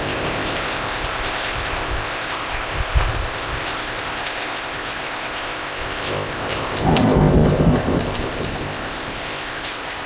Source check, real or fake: fake